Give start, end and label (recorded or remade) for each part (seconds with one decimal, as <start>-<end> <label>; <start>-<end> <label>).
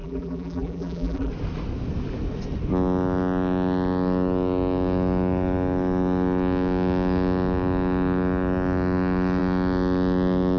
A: 0.0-1.3 remade; 1.3-10.6 recorded